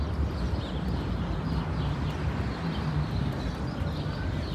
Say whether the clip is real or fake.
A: real